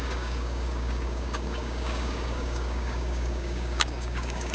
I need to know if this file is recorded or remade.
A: remade